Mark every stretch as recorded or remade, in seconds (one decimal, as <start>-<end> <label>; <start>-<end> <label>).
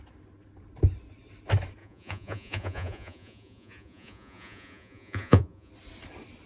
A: 0.0-1.8 recorded; 1.8-5.7 remade; 5.7-6.5 recorded